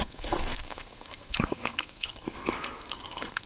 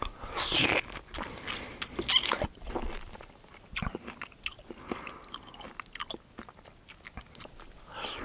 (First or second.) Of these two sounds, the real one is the second